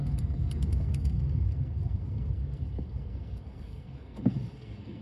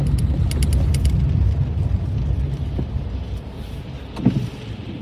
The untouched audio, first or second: second